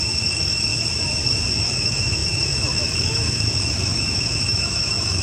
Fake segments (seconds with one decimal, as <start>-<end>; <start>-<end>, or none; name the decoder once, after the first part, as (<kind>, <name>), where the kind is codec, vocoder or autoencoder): 0.0-0.7 (autoencoder, DAC-VAE); 1.6-5.2